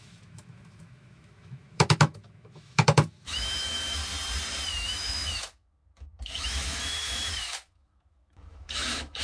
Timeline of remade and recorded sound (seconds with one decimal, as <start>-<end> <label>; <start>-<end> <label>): 0.0-4.0 remade; 4.0-4.7 recorded; 4.7-9.2 remade